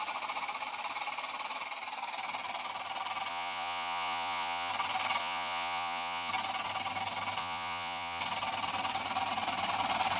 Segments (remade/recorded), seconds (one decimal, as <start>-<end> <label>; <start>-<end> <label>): 0.0-3.3 recorded; 3.3-4.7 remade; 4.7-5.2 recorded; 5.2-6.3 remade; 6.3-7.4 recorded; 7.4-8.2 remade; 8.2-10.2 recorded